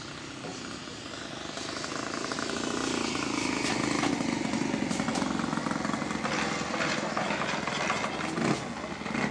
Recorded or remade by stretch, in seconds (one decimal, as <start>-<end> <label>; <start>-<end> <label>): 0.0-9.3 recorded